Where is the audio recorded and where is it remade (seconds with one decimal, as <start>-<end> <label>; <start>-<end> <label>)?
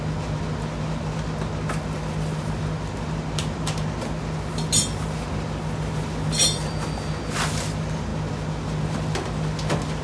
0.0-10.0 recorded